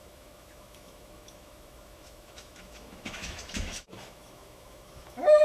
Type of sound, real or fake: fake